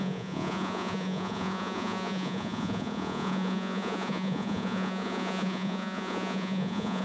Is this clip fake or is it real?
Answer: fake